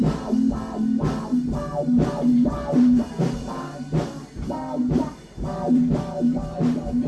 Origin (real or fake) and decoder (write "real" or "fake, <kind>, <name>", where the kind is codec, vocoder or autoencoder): fake, vocoder, BigVGAN v2